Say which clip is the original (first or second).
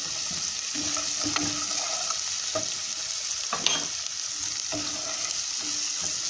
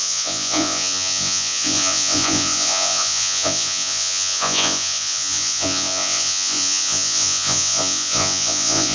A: first